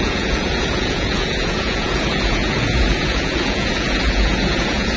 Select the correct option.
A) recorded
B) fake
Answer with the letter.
B